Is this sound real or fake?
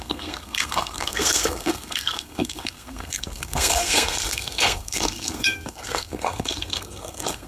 fake